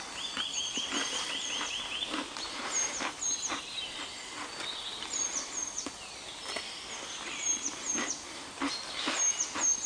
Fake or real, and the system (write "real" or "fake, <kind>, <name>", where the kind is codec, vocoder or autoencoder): real